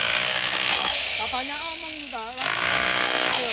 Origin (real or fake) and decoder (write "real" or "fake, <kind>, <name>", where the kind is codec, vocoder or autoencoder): fake, autoencoder, DAC-VAE